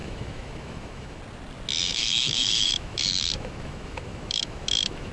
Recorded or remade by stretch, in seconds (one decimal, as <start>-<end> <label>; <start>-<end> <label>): 0.0-1.2 remade; 1.2-1.8 recorded; 1.8-5.1 remade